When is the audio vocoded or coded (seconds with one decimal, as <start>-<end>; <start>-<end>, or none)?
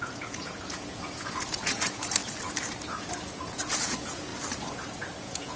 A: 0.0-2.2; 2.9-4.3; 4.9-5.6